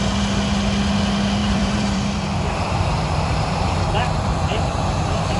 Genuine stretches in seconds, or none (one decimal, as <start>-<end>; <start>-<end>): 0.0-1.4; 4.6-5.4